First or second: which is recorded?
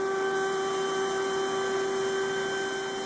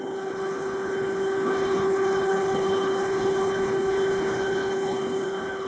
first